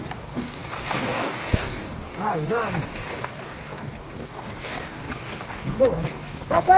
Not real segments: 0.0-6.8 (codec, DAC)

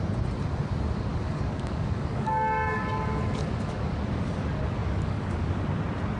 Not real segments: 1.1-3.2 (codec, DAC); 4.8-5.6